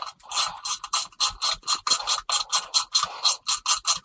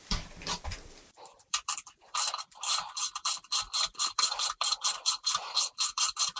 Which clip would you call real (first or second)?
first